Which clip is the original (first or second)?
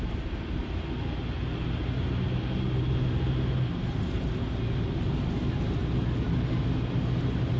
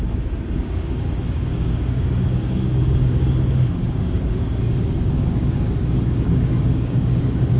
first